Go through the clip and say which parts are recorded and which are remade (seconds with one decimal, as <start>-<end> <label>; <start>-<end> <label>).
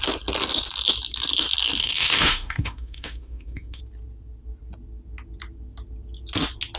0.0-1.8 recorded; 1.8-3.8 remade; 3.8-6.8 recorded